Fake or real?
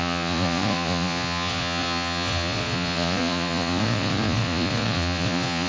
fake